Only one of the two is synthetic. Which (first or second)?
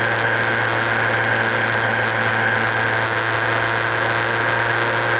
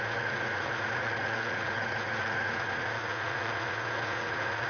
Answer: second